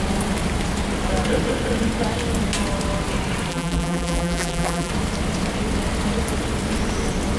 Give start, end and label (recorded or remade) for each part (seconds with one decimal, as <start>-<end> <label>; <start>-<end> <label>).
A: 0.0-3.5 recorded; 3.5-4.9 remade; 4.9-7.4 recorded